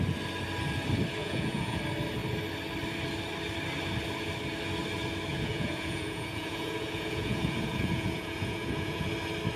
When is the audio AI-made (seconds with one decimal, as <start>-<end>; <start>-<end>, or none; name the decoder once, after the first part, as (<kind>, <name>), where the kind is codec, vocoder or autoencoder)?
1.2-1.8 (vocoder, Vocos); 5.3-9.1